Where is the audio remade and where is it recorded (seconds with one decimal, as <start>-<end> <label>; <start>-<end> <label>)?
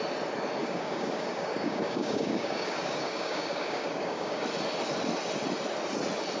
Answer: 0.0-0.6 recorded; 0.6-4.4 remade; 4.4-6.4 recorded